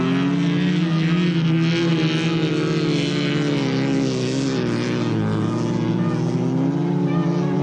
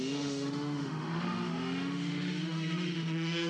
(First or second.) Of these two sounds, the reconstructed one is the second